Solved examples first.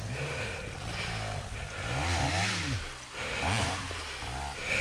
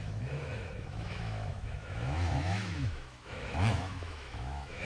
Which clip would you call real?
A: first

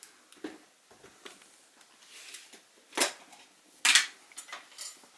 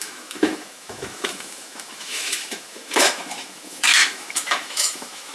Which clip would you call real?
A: first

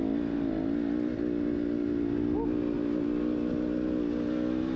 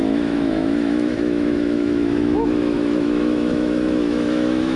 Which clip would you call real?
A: first